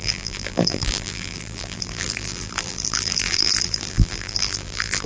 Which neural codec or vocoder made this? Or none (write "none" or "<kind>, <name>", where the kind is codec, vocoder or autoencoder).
vocoder, BigVGAN v2